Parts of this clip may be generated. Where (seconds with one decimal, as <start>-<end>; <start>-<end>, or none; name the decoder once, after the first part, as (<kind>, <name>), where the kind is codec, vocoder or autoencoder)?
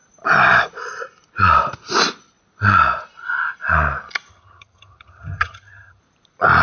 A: 4.3-6.0 (vocoder, HiFi-GAN)